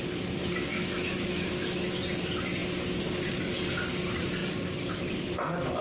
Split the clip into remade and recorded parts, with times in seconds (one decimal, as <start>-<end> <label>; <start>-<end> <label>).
0.0-0.7 recorded; 0.7-2.0 remade; 2.0-5.8 recorded